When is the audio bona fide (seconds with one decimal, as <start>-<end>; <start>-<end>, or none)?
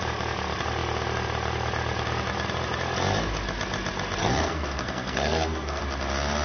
0.0-4.2; 5.8-6.4